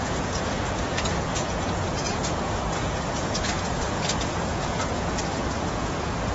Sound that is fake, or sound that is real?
fake